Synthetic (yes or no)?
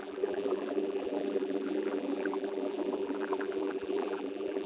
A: yes